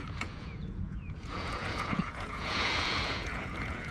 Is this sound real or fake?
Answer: fake